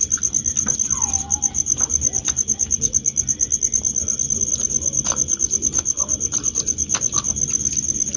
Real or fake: real